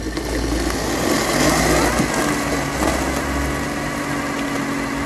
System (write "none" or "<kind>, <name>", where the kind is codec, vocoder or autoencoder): none